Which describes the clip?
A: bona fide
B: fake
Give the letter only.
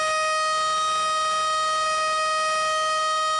A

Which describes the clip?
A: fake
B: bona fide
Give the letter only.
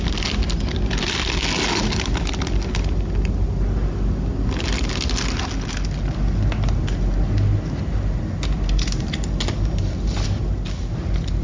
B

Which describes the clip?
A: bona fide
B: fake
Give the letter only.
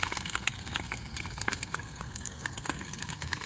B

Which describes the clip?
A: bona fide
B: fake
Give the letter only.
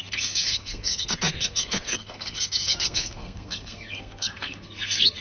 B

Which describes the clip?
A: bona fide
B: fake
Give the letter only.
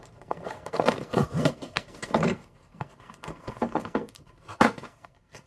B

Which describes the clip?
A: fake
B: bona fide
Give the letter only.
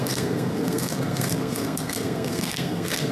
A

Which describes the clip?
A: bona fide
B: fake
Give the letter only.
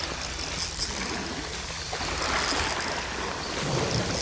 A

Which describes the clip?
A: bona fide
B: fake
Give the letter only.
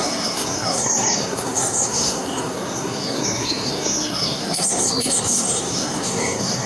B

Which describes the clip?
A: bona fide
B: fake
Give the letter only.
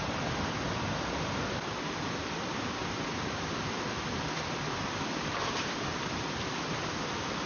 A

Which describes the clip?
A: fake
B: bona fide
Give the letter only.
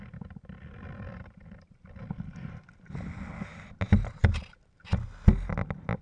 B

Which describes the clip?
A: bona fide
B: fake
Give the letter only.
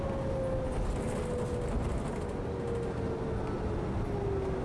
A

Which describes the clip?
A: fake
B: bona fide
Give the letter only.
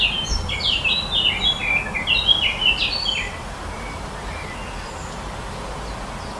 B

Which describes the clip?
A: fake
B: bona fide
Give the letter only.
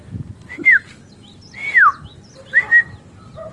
B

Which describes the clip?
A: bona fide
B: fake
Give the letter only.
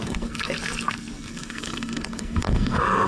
B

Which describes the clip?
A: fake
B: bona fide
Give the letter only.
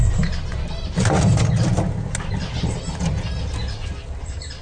B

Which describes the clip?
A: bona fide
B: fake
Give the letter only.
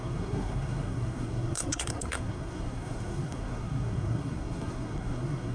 B